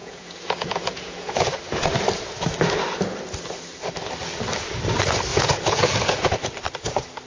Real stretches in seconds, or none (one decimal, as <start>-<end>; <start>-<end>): 1.6-5.3; 6.3-7.3